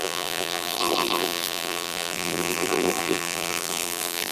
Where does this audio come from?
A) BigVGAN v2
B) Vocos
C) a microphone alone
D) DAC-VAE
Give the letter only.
A